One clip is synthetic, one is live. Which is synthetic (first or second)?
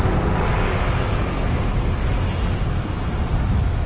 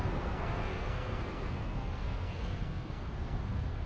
second